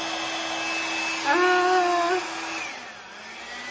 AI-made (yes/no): no